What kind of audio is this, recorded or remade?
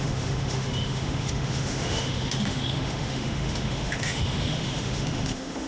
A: remade